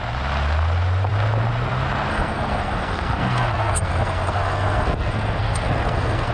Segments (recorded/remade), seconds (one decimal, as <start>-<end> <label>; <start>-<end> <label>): 0.0-2.1 recorded; 2.1-6.3 remade